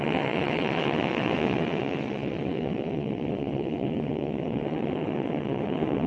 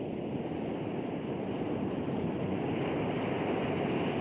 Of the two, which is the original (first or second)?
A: second